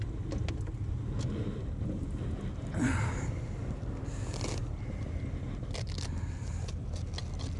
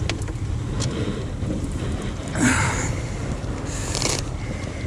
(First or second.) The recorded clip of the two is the first